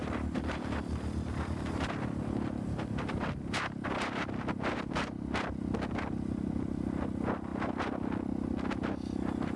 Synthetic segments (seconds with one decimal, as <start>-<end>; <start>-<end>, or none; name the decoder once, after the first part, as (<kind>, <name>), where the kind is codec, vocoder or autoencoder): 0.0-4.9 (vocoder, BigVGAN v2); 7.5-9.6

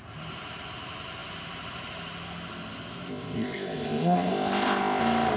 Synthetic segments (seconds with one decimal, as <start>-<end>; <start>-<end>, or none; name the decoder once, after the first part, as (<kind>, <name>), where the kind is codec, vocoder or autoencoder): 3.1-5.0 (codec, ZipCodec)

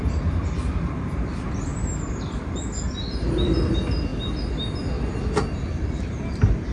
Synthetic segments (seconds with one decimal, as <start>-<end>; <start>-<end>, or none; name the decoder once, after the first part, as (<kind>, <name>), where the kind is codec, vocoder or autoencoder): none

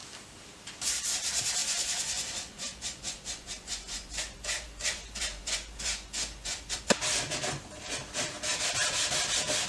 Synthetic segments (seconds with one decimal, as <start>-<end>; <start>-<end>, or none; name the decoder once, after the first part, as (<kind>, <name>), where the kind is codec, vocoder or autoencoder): 1.6-6.8 (vocoder, Vocos)

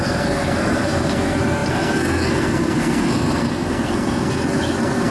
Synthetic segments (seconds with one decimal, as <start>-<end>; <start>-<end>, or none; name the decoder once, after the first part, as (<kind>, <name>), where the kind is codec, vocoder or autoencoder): 0.0-5.1 (codec, SNAC)

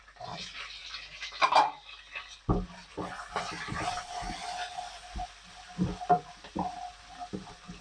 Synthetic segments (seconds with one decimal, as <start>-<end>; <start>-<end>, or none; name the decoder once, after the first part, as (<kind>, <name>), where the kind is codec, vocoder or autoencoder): none

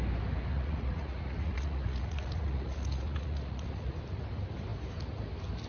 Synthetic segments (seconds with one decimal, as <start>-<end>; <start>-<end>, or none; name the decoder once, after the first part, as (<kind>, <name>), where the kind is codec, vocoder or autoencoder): 0.5-3.9 (vocoder, Vocos)

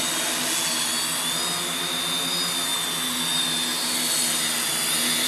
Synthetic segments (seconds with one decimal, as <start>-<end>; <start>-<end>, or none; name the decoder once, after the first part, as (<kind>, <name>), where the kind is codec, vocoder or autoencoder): none